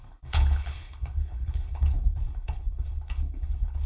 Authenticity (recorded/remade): remade